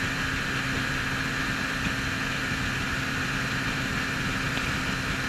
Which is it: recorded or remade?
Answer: recorded